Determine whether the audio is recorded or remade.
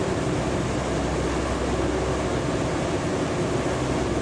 recorded